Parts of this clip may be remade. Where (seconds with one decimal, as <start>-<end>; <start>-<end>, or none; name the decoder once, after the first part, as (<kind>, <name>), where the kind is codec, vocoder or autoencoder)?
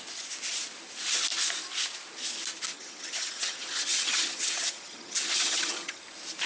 2.7-6.0 (vocoder, HiFi-GAN)